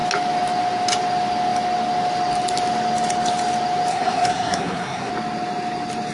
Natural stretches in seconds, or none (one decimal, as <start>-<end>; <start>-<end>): 0.0-3.9; 5.1-6.1